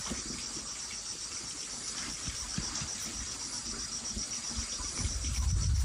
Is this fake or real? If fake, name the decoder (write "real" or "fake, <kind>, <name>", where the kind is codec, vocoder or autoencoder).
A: real